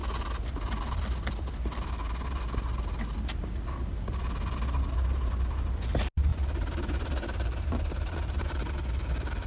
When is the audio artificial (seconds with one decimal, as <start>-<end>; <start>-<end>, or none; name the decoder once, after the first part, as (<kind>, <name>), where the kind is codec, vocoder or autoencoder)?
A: 6.3-8.7 (vocoder, BigVGAN v2)